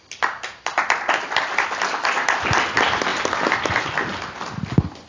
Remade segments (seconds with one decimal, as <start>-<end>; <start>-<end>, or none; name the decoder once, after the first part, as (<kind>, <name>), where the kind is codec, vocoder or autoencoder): none